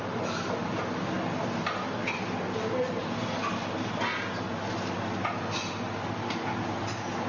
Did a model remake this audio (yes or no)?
no